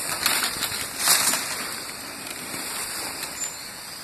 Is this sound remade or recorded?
remade